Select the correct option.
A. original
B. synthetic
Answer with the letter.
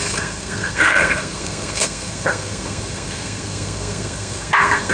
B